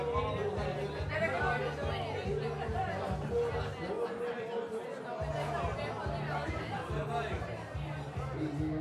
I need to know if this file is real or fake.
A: real